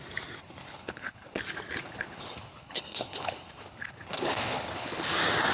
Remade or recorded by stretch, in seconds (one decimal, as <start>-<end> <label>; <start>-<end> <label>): 0.0-0.4 recorded; 0.4-1.4 remade; 1.4-1.8 recorded; 1.8-5.1 remade; 5.1-5.5 recorded